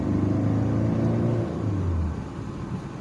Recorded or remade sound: recorded